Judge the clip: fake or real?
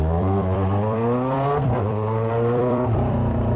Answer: fake